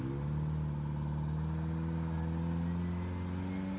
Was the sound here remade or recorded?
recorded